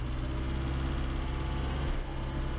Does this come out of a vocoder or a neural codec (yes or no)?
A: no